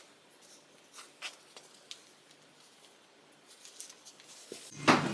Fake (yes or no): no